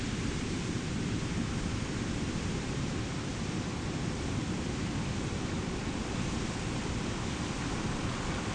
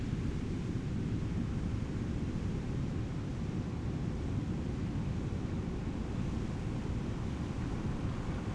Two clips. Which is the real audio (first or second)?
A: second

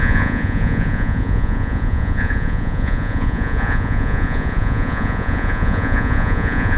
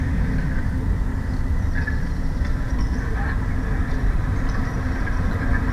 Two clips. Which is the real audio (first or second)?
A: second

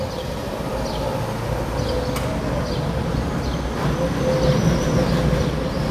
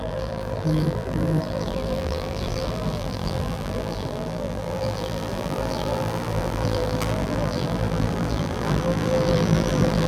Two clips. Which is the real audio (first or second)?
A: first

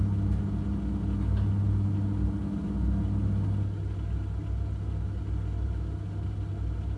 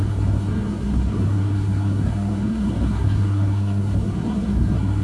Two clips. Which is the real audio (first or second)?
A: first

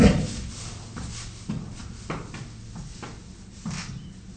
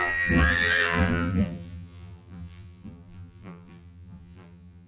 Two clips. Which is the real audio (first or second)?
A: first